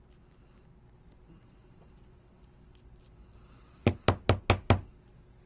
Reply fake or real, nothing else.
real